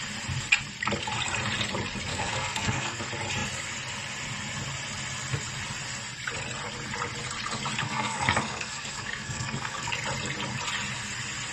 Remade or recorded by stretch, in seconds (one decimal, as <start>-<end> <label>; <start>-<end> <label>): 0.0-2.1 recorded; 2.1-3.0 remade; 3.0-7.8 recorded; 7.8-9.9 remade; 9.9-11.5 recorded